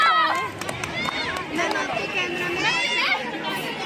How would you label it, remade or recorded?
recorded